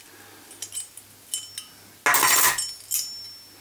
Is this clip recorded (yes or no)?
yes